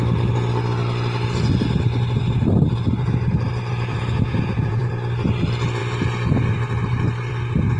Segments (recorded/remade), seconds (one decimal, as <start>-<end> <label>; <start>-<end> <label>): 0.0-3.7 recorded; 3.7-4.9 remade; 4.9-7.8 recorded